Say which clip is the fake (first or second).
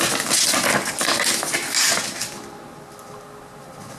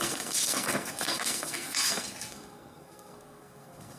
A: second